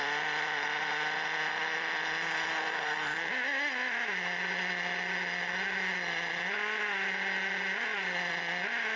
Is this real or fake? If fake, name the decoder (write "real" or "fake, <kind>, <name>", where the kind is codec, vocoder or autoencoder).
real